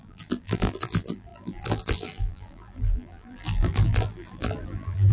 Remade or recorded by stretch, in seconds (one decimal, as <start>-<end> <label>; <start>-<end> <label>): 0.0-5.1 remade